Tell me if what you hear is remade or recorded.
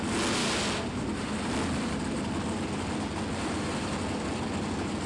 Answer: recorded